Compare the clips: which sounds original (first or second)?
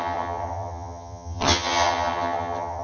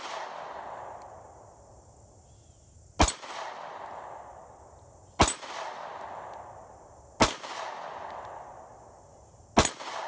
second